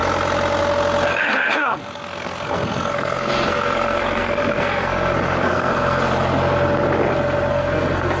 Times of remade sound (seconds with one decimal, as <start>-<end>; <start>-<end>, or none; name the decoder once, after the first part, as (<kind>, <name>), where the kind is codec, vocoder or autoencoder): 1.1-6.0 (codec, SNAC); 7.5-8.2